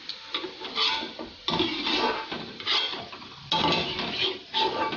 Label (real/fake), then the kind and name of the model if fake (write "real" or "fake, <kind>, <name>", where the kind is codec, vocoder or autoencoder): real